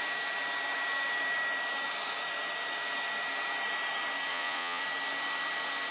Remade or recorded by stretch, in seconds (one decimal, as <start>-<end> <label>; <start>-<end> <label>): 0.0-4.3 recorded; 4.3-4.8 remade; 4.8-5.9 recorded